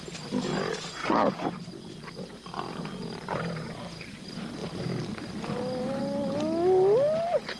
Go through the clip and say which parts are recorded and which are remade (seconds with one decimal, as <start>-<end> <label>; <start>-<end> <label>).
0.0-7.6 recorded